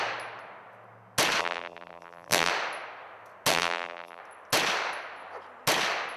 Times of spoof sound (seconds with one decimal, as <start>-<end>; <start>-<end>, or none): 1.4-2.5; 3.5-4.2